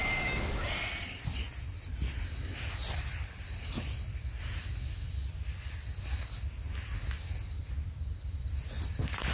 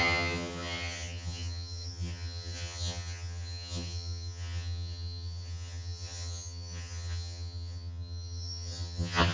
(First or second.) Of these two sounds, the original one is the first